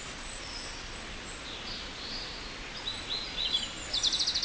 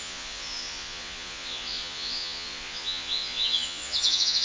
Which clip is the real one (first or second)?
first